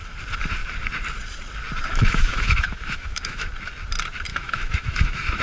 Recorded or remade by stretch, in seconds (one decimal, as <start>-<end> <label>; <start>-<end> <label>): 0.0-1.9 recorded; 1.9-3.5 remade; 3.5-4.3 recorded; 4.3-5.4 remade